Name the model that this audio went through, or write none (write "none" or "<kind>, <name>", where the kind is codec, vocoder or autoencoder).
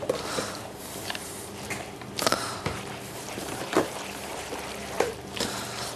vocoder, BigVGAN v2